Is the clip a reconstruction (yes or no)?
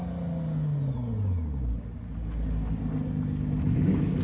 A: no